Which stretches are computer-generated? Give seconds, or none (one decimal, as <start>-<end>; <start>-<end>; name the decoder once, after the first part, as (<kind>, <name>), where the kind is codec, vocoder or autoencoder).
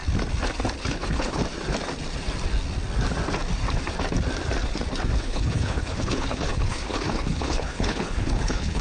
0.8-1.4 (codec, HILCodec); 5.2-8.8